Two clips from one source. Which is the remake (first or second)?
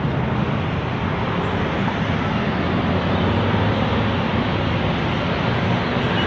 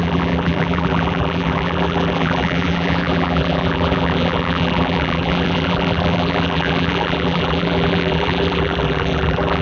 second